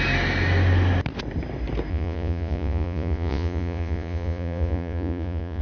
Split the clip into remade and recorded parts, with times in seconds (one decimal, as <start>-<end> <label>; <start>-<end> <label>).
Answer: 0.0-1.9 recorded; 1.9-5.6 remade